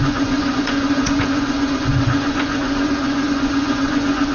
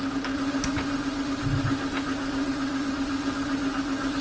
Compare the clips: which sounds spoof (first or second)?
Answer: first